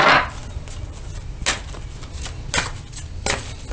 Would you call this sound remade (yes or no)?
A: no